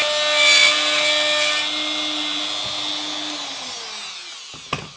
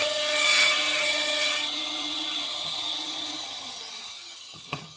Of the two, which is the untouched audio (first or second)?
first